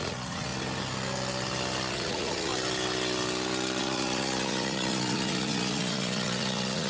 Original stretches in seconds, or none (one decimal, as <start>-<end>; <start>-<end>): 0.5-1.9; 2.5-3.8